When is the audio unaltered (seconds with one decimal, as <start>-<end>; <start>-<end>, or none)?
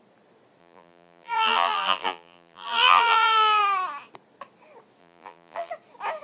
0.0-0.6; 3.6-5.0; 5.7-6.2